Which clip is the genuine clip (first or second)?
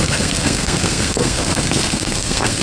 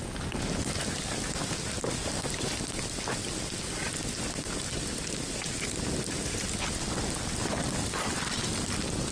second